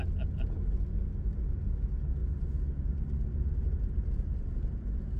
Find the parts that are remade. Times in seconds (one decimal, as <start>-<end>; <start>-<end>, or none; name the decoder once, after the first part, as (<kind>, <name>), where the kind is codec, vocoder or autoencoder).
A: none